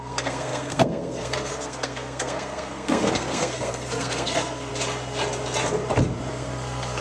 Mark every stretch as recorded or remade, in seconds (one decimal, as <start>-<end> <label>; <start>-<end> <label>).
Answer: 0.0-4.7 remade; 4.7-6.3 recorded; 6.3-7.0 remade

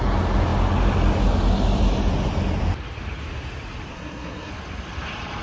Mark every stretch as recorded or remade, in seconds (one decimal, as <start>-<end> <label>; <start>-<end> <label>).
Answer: 0.0-3.9 recorded; 3.9-4.5 remade; 4.5-5.4 recorded

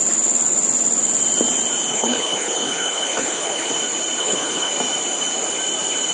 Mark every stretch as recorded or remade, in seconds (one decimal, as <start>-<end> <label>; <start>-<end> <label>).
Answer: 0.0-1.9 recorded; 1.9-3.7 remade; 3.7-4.2 recorded; 4.2-4.7 remade; 4.7-6.1 recorded

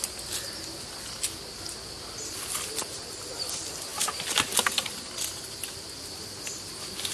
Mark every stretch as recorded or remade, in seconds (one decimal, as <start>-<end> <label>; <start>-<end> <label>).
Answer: 0.0-7.1 recorded

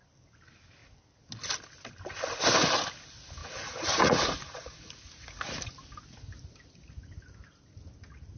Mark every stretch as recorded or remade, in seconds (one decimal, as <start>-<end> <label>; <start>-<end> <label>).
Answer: 0.0-3.4 recorded; 3.4-5.7 remade; 5.7-8.4 recorded

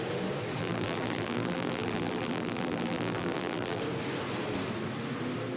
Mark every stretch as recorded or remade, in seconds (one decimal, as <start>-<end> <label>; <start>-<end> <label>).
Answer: 0.0-0.6 recorded; 0.6-3.8 remade; 3.8-5.6 recorded

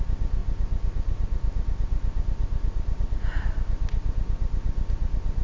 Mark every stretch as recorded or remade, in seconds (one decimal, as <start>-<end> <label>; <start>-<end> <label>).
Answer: 0.0-5.4 recorded